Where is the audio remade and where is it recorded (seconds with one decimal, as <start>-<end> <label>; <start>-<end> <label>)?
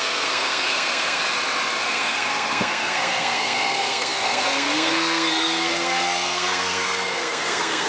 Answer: 0.0-1.2 remade; 1.2-1.8 recorded; 1.8-7.9 remade